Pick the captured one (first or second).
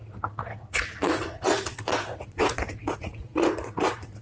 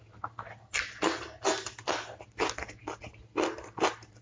second